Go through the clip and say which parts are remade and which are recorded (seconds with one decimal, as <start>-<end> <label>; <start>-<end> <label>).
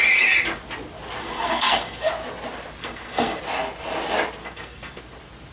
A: 0.0-1.2 recorded; 1.2-2.1 remade; 2.1-2.8 recorded; 2.8-3.4 remade; 3.4-4.4 recorded; 4.4-5.0 remade; 5.0-5.5 recorded